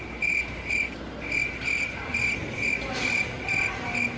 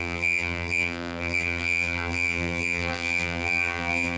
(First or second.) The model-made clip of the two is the second